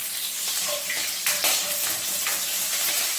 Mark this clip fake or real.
fake